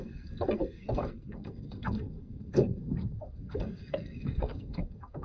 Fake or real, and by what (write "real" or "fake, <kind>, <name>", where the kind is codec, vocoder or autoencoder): fake, codec, SNAC